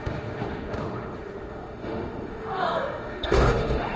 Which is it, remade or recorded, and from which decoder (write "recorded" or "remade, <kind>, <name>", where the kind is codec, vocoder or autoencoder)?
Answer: remade, autoencoder, DAC-VAE